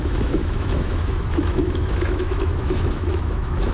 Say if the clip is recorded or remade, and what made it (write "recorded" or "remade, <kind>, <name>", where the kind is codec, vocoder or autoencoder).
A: remade, autoencoder, DAC-VAE